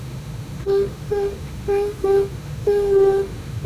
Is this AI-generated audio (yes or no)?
yes